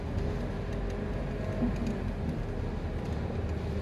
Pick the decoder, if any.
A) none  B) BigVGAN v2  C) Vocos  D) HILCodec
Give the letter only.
A